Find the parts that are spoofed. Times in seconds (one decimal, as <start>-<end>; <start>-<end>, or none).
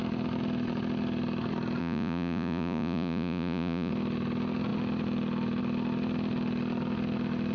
1.8-3.9